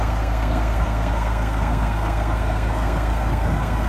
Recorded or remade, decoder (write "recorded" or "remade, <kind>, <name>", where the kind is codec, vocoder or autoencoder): remade, codec, SNAC